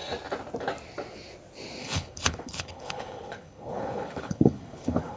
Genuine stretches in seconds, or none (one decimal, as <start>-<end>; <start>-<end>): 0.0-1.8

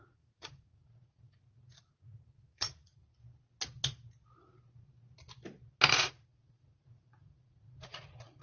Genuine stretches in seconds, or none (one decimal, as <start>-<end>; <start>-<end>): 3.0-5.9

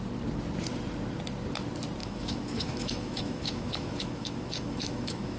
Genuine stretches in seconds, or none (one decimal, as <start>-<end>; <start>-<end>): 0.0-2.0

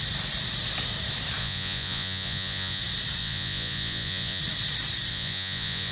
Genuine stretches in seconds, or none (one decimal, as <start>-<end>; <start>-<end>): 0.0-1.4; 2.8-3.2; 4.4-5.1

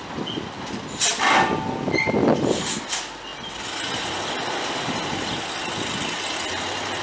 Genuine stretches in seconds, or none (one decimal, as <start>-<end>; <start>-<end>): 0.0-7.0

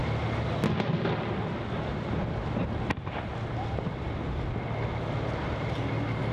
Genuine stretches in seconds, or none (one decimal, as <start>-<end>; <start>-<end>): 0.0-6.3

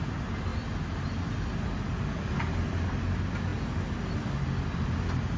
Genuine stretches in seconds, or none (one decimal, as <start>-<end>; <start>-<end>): 0.0-5.4

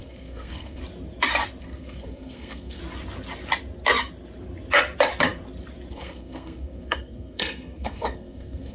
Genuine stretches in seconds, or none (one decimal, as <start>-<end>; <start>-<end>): 0.8-1.6; 2.8-5.9